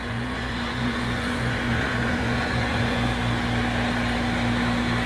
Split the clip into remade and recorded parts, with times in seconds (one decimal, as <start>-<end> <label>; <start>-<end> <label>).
0.0-3.1 remade; 3.1-5.1 recorded